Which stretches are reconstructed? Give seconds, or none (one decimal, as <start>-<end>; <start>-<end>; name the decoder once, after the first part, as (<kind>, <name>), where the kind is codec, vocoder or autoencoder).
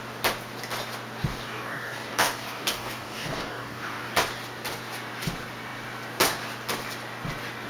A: 1.3-4.1 (codec, DAC)